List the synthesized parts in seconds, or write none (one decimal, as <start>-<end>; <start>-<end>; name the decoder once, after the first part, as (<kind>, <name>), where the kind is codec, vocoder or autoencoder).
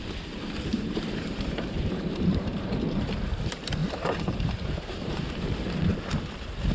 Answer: 0.7-2.8 (vocoder, BigVGAN v2); 3.8-5.2